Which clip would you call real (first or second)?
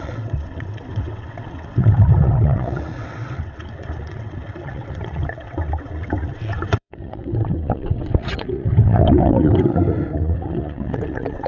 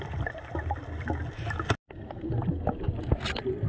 second